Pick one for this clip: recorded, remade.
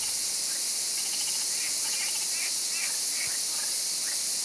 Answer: recorded